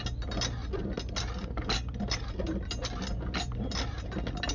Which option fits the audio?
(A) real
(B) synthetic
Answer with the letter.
A